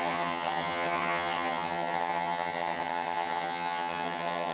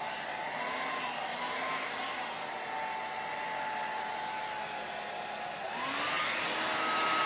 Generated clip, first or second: first